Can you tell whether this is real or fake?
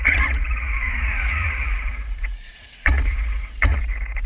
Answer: fake